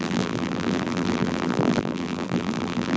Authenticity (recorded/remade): remade